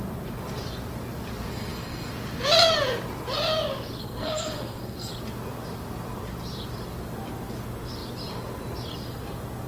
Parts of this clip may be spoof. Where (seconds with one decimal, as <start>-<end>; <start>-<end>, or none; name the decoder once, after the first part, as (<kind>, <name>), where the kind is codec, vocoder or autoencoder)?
1.5-2.1 (codec, SNAC); 4.0-5.1